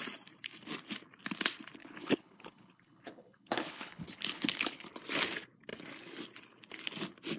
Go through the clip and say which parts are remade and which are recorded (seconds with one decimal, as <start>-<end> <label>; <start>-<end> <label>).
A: 0.0-1.8 recorded; 1.8-4.9 remade; 4.9-7.4 recorded